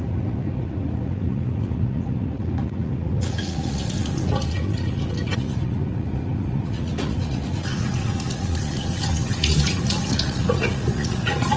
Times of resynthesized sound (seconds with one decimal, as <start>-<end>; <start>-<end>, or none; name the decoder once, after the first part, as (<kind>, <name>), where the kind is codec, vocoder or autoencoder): 0.0-11.6 (vocoder, Vocos)